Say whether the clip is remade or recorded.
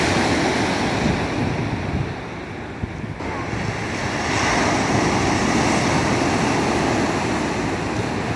recorded